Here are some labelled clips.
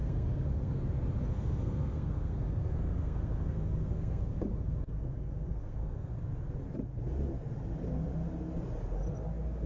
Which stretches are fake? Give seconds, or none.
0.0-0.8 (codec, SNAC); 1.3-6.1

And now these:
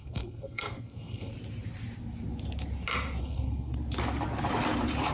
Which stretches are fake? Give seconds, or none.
0.0-1.3 (codec, SNAC); 3.2-3.7

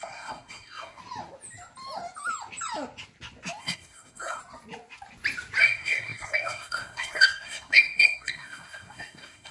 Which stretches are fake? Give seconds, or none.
0.0-1.0 (codec, SNAC); 3.6-4.4; 5.6-9.5

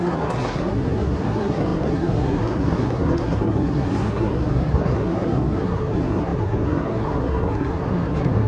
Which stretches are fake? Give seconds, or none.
0.0-8.5 (codec, SNAC)